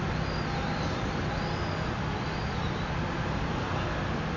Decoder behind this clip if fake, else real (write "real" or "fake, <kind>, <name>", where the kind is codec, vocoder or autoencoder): real